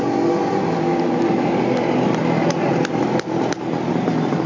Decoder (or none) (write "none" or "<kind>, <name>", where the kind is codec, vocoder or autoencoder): none